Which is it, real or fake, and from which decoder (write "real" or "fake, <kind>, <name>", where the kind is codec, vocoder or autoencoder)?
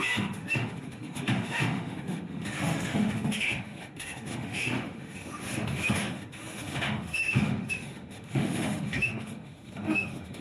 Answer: fake, autoencoder, DAC-VAE